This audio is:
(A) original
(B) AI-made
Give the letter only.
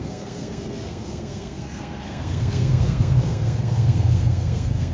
B